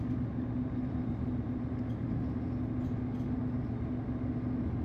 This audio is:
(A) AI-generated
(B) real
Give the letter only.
B